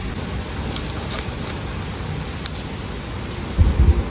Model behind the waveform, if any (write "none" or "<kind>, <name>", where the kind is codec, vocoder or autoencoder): none